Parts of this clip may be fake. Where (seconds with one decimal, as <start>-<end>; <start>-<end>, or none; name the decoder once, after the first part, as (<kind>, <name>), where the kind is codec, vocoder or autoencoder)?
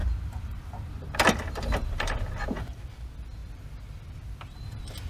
0.0-2.8 (vocoder, BigVGAN v2); 3.4-4.6